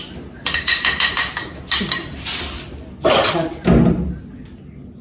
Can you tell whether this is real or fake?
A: real